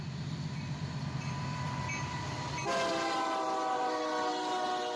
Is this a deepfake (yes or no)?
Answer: no